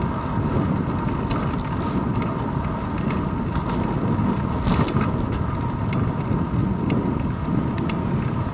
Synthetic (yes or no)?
no